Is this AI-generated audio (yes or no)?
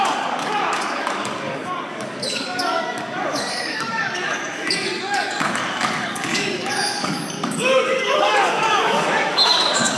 yes